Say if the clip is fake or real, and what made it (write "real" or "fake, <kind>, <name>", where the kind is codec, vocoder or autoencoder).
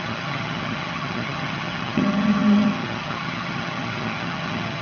fake, vocoder, HiFi-GAN